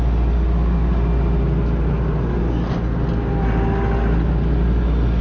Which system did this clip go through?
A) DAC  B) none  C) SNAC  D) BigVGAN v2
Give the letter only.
B